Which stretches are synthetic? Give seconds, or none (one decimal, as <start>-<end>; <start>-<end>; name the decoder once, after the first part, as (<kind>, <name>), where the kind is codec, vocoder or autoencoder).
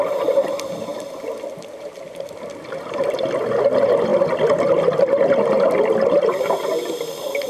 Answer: none